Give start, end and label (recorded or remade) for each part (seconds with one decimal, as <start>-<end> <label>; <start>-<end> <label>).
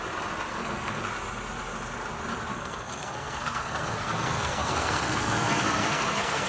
0.0-0.5 recorded; 0.5-1.0 remade; 1.0-2.5 recorded; 2.5-6.5 remade